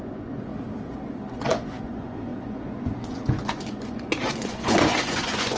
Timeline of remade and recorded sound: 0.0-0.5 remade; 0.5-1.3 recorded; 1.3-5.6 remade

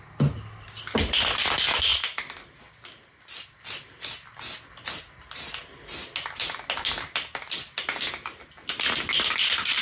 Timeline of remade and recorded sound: 0.0-9.8 recorded

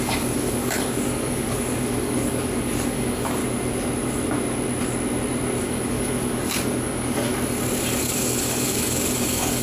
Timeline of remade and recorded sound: 0.0-3.4 remade; 3.4-5.6 recorded; 5.6-7.3 remade; 7.3-8.0 recorded; 8.0-9.6 remade